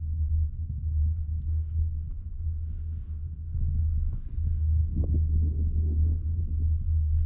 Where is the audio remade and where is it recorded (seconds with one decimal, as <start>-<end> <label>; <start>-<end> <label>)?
0.0-1.5 recorded; 1.5-3.8 remade; 3.8-4.8 recorded; 4.8-6.4 remade; 6.4-7.3 recorded